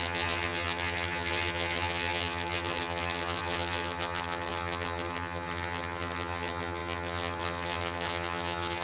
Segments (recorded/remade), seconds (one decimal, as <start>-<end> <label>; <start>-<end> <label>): 0.0-8.8 remade